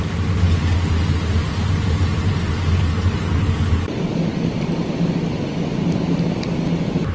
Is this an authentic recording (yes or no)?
yes